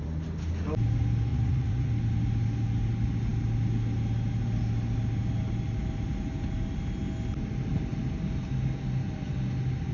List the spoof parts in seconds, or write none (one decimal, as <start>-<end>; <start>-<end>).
1.3-1.9